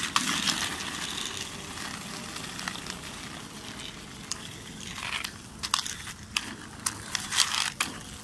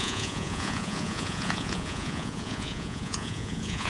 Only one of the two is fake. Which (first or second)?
second